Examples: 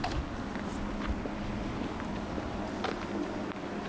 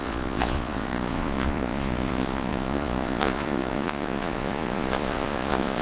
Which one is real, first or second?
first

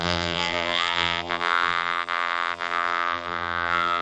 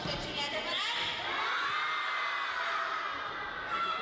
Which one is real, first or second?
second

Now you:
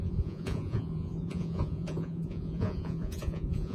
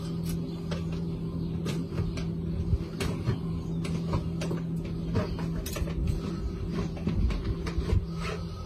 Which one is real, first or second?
second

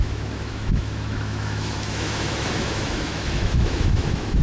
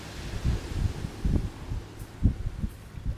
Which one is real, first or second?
second